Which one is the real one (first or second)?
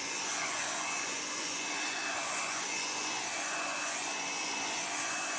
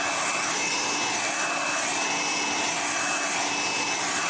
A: second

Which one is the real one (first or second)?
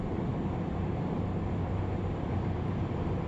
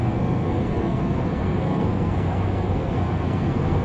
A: first